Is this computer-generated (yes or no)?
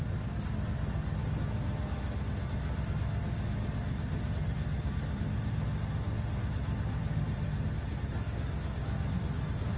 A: no